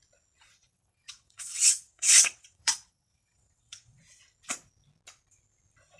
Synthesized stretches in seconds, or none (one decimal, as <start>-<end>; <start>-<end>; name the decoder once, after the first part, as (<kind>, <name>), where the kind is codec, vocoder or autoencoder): 0.6-4.0 (vocoder, WaveNeXt)